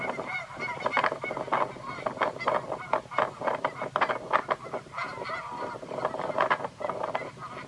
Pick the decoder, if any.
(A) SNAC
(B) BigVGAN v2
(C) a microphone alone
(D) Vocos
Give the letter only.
C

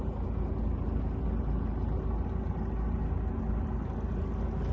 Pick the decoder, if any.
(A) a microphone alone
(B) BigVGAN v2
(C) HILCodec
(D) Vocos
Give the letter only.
A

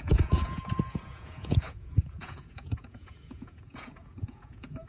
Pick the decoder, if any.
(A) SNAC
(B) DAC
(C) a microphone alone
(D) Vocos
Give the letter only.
D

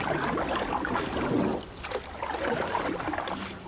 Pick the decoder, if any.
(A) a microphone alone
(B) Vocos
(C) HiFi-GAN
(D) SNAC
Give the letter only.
A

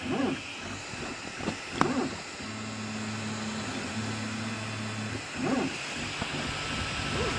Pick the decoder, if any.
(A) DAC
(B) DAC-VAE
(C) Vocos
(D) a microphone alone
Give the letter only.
D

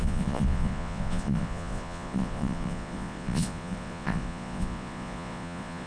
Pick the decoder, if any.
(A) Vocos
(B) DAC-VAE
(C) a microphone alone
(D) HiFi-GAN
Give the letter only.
A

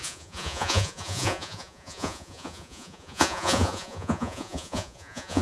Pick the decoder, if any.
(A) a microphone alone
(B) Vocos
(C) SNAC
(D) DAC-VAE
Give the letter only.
B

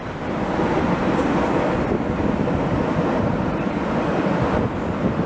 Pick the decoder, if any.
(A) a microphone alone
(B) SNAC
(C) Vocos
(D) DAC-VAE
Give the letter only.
A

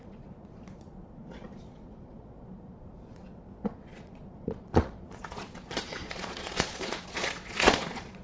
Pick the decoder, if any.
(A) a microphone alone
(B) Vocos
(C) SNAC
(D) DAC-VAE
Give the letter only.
B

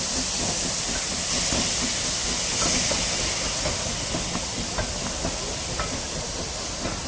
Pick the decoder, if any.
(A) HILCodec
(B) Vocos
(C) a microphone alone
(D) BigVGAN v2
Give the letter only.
C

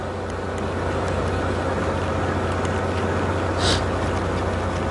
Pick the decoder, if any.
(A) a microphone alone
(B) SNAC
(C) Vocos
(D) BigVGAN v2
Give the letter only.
A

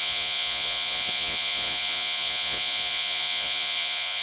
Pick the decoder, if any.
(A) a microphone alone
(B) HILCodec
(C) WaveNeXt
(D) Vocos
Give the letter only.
D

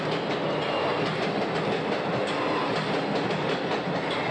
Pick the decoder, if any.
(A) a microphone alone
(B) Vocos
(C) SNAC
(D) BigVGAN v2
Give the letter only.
A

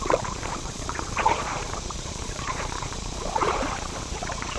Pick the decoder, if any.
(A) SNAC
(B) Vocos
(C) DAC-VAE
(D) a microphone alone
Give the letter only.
B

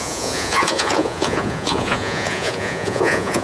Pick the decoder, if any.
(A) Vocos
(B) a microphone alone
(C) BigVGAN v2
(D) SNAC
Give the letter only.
A